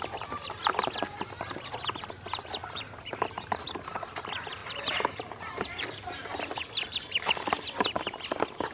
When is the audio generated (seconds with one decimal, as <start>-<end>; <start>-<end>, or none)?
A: 2.6-3.6; 4.6-7.3